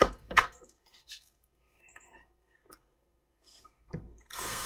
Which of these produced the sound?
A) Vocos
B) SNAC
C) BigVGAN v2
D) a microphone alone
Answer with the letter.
B